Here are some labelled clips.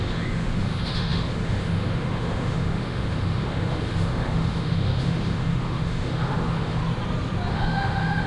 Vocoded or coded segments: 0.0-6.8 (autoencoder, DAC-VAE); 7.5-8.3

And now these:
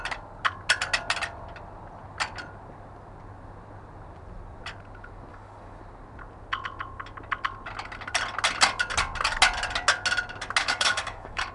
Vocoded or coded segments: 5.3-5.8 (codec, DAC); 10.6-11.5